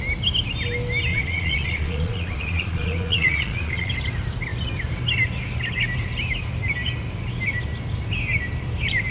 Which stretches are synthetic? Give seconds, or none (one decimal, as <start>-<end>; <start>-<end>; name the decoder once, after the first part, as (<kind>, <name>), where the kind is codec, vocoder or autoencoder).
1.1-3.9 (vocoder, Vocos)